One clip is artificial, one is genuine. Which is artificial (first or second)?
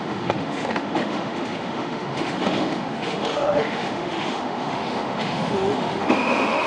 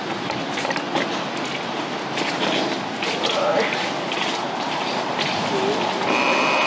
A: first